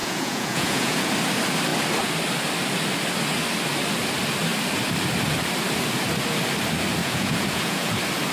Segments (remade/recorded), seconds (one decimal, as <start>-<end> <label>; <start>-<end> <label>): 0.0-1.1 remade; 1.1-7.0 recorded; 7.0-7.9 remade; 7.9-8.3 recorded

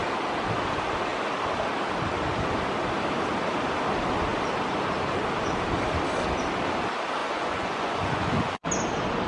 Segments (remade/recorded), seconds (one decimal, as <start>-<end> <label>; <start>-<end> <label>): 0.0-7.2 recorded; 7.2-8.7 remade; 8.7-9.3 recorded

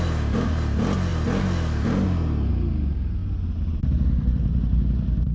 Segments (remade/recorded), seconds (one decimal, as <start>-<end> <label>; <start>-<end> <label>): 0.0-5.3 recorded

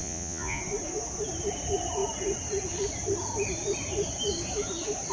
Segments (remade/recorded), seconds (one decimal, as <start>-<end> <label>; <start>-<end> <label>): 0.0-0.6 remade; 0.6-5.1 recorded

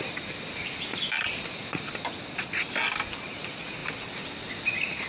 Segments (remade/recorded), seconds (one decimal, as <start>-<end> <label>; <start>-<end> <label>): 0.0-5.1 recorded

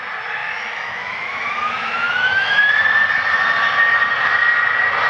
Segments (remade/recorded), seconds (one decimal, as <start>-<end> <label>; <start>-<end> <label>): 0.0-0.4 recorded; 0.4-2.7 remade; 2.7-5.1 recorded

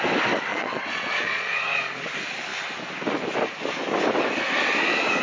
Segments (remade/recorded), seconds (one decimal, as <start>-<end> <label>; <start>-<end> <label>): 0.0-0.5 recorded; 0.5-1.8 remade; 1.8-5.2 recorded